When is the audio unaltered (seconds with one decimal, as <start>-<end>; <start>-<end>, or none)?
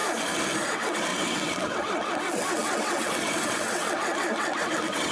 0.0-0.7